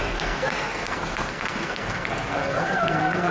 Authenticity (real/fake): fake